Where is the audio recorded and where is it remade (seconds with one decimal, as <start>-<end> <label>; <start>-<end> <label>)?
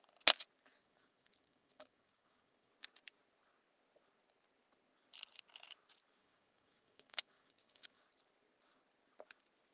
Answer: 0.0-0.8 recorded; 0.8-2.7 remade; 2.7-6.2 recorded; 6.2-8.0 remade; 8.0-9.7 recorded